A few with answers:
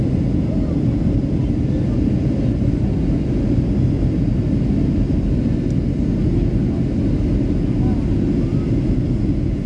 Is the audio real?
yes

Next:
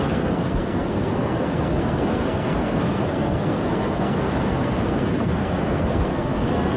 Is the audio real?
no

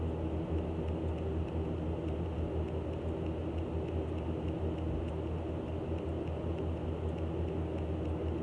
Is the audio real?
yes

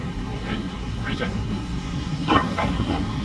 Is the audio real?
no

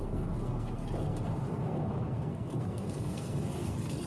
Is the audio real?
no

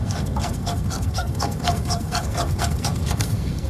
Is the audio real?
no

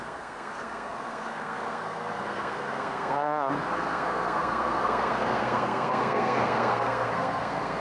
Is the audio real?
no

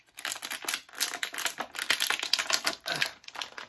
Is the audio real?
yes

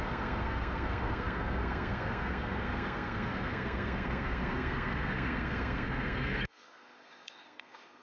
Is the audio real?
no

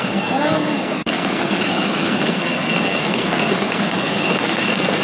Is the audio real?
no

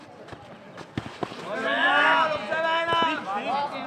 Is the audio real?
yes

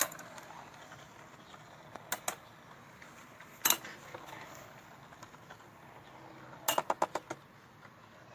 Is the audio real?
yes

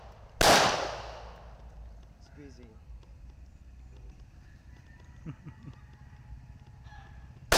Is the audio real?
yes